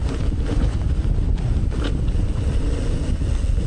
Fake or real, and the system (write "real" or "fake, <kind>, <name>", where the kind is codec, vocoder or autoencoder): real